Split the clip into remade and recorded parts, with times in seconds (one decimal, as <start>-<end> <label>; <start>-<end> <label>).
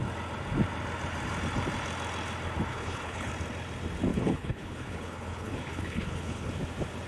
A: 0.0-2.7 recorded; 2.7-3.3 remade; 3.3-4.1 recorded; 4.1-6.5 remade; 6.5-7.1 recorded